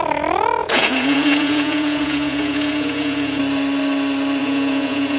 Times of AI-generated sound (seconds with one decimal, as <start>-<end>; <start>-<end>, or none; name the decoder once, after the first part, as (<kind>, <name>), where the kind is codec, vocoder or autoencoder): 0.6-3.4 (vocoder, Vocos); 4.4-5.2